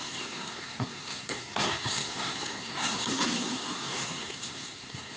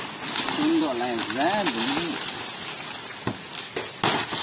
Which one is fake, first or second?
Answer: first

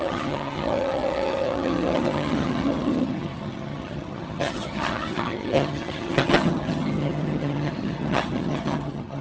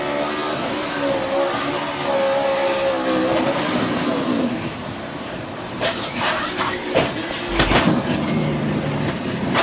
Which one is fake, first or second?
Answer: first